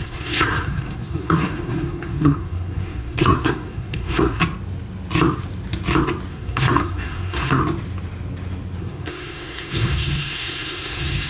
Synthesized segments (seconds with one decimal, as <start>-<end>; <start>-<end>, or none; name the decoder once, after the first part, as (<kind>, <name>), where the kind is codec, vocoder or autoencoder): 0.0-4.4 (codec, SNAC); 6.3-7.6; 8.8-11.3